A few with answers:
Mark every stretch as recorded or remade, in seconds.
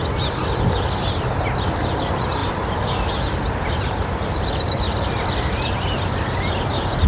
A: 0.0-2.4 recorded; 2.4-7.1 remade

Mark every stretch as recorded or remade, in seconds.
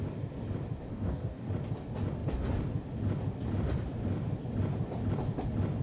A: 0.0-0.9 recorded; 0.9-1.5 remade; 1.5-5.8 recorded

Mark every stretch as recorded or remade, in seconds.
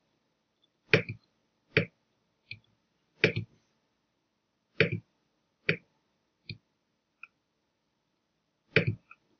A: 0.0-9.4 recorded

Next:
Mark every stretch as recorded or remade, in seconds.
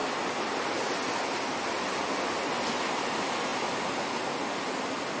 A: 0.0-5.2 recorded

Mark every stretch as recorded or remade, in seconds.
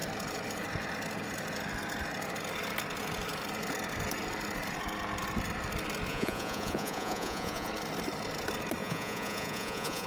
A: 0.0-6.1 recorded; 6.1-7.7 remade; 7.7-8.8 recorded; 8.8-10.1 remade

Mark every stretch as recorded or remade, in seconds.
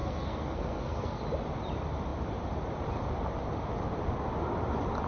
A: 0.0-1.2 remade; 1.2-5.1 recorded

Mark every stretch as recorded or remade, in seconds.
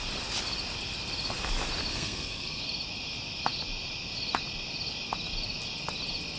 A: 0.0-1.9 recorded; 1.9-2.6 remade; 2.6-6.4 recorded